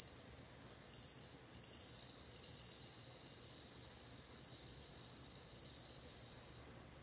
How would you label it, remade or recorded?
recorded